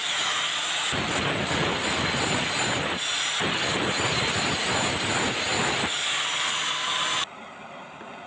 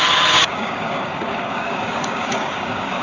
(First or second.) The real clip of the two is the first